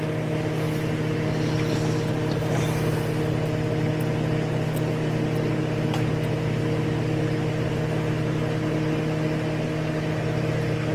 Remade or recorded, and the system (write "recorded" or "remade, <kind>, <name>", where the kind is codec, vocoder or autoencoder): recorded